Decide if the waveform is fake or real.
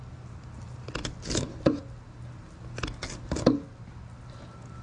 real